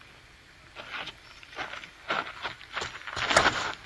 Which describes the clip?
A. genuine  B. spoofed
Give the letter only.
A